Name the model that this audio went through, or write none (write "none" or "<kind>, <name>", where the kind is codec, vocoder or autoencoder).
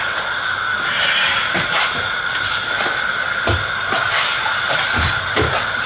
none